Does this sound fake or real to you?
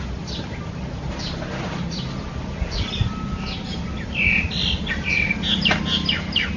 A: real